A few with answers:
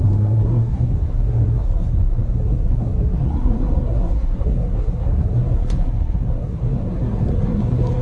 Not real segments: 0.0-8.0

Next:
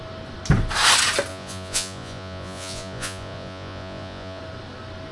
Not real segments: 1.3-4.4

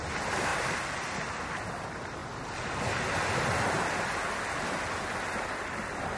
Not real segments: 0.5-1.1

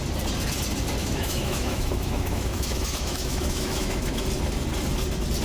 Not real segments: 1.0-4.2

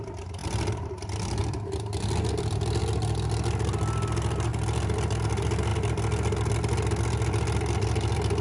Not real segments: 0.4-0.9; 1.4-2.8

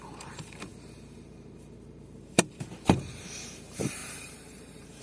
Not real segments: 0.0-5.0